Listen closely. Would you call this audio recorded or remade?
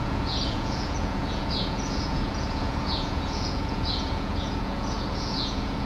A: remade